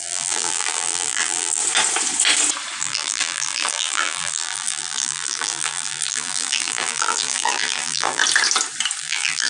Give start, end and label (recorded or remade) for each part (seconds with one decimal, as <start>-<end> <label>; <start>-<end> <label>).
0.0-1.6 remade; 1.6-2.8 recorded; 2.8-8.2 remade; 8.2-9.0 recorded; 9.0-9.5 remade